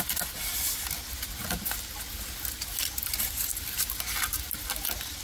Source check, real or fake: real